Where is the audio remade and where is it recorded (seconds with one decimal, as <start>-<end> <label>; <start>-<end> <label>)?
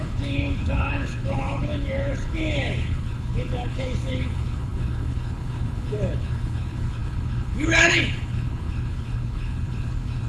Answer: 0.0-10.3 remade